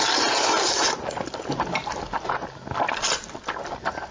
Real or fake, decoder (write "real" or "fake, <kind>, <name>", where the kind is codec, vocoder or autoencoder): real